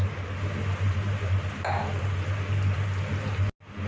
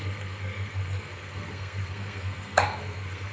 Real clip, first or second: first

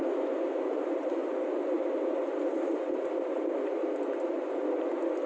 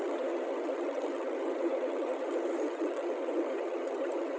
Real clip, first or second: first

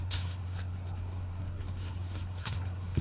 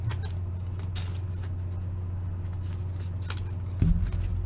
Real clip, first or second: second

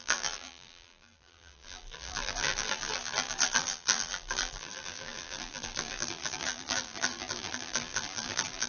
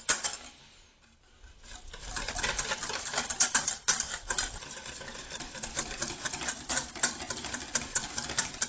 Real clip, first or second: second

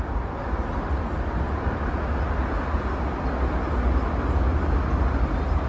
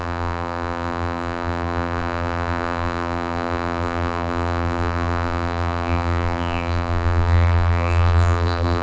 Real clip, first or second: first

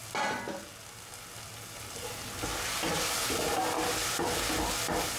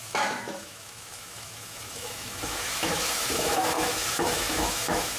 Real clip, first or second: first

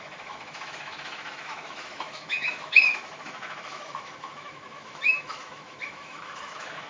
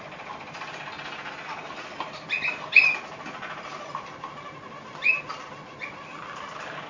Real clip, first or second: second